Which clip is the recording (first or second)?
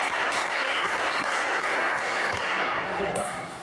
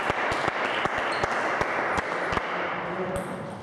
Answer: second